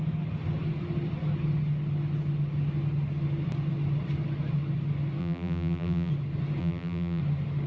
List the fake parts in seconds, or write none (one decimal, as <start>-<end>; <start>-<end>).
5.2-6.1; 6.6-7.2